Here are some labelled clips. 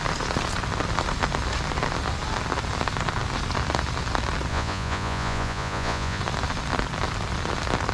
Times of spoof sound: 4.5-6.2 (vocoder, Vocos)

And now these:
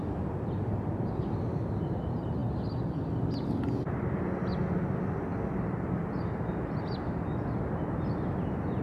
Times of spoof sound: none